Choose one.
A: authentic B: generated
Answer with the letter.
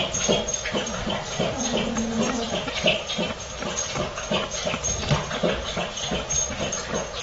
A